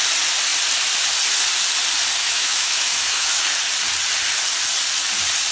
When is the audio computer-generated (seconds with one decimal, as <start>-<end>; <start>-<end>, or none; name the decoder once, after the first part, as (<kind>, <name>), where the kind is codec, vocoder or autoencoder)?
2.2-3.4 (autoencoder, DAC-VAE)